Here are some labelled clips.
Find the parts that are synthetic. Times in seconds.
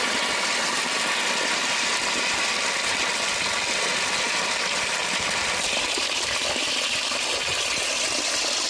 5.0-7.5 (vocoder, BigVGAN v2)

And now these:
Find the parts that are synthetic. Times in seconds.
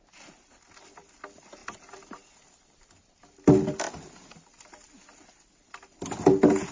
none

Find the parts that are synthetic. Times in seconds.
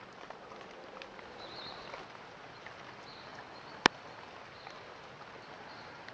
3.3-4.3 (vocoder, BigVGAN v2)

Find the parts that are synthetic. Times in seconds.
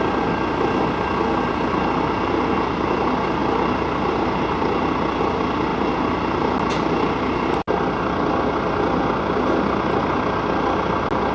none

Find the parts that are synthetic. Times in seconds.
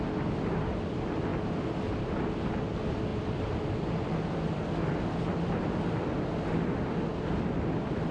3.1-4.6 (vocoder, BigVGAN v2)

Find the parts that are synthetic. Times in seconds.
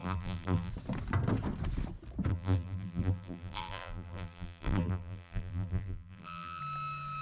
0.0-0.7 (vocoder, BigVGAN v2); 2.3-6.6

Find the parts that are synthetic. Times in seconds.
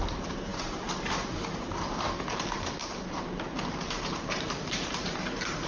0.0-0.5 (vocoder, BigVGAN v2); 2.2-5.7